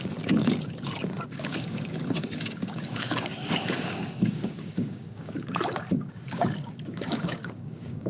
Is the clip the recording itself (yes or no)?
no